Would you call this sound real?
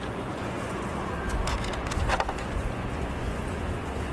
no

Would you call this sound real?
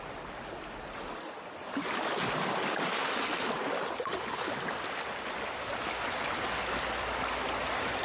yes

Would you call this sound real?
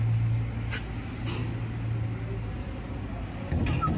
yes